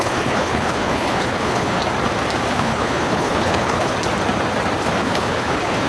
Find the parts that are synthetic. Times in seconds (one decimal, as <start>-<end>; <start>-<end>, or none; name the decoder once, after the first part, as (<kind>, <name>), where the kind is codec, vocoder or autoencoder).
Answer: 0.0-1.8 (codec, HILCodec); 2.5-3.9; 4.8-5.9